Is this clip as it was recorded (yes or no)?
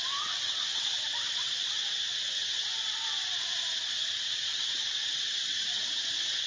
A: no